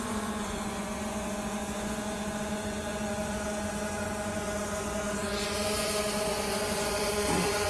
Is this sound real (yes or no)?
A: no